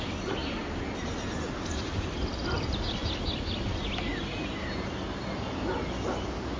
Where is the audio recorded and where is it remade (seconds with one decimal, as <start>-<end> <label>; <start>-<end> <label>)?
0.0-6.6 recorded